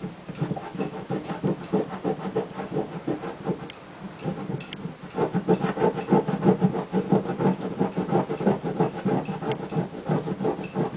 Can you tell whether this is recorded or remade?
recorded